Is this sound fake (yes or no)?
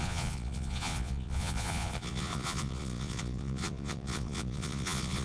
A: yes